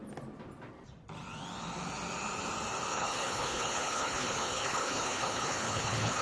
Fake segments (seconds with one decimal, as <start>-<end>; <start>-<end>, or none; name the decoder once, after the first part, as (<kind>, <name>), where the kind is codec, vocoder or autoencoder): 2.9-6.2 (codec, HILCodec)